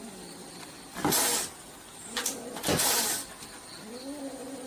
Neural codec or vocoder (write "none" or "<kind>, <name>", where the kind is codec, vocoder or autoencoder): none